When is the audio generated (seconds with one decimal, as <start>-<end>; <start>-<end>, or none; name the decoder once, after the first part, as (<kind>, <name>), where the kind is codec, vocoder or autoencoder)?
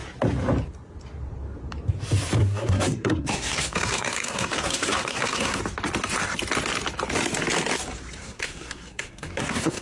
2.4-5.6 (codec, SNAC); 8.2-9.8